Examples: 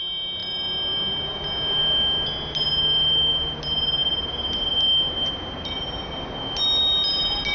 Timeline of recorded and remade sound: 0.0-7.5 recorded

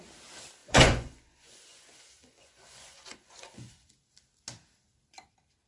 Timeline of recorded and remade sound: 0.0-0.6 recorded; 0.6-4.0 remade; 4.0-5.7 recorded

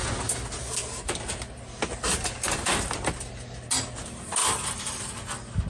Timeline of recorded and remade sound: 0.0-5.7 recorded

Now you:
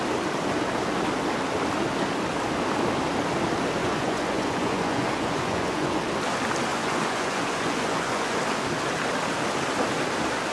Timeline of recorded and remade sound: 0.0-3.8 recorded; 3.8-6.0 remade; 6.0-6.7 recorded; 6.7-8.4 remade; 8.4-10.5 recorded

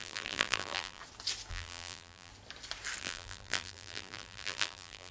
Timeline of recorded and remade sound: 0.0-1.0 remade; 1.0-1.5 recorded; 1.5-2.3 remade; 2.3-3.0 recorded; 3.0-5.1 remade

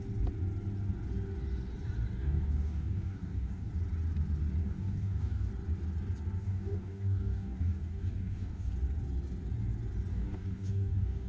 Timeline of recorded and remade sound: 0.0-2.2 recorded; 2.2-3.7 remade; 3.7-4.6 recorded; 4.6-5.5 remade; 5.5-6.4 recorded; 6.4-8.7 remade; 8.7-10.1 recorded; 10.1-11.3 remade